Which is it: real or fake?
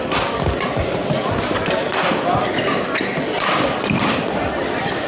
fake